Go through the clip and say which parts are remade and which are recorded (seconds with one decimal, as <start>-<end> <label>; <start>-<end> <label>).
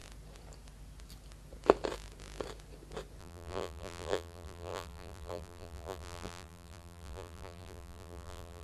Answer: 0.0-3.2 recorded; 3.2-8.6 remade